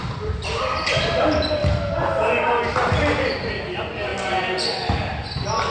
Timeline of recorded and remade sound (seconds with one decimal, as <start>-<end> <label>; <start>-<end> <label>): 0.0-5.7 recorded